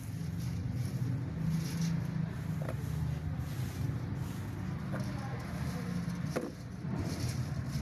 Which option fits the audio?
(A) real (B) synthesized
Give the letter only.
A